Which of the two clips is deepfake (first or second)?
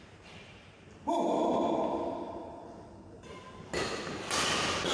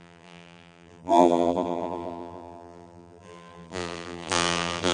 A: second